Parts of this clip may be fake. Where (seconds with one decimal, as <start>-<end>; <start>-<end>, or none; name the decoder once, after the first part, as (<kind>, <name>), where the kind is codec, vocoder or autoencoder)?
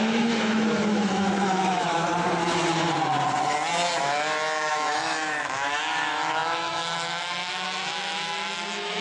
0.0-2.1 (autoencoder, DAC-VAE); 4.7-9.0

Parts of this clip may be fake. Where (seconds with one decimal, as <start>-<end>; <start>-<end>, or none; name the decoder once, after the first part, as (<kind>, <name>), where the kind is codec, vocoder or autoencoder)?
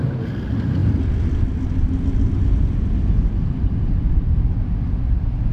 none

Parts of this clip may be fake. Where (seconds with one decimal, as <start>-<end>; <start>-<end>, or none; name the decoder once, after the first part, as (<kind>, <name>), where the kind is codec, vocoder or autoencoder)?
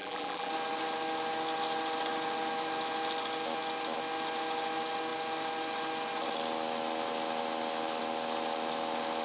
0.0-0.5 (vocoder, BigVGAN v2)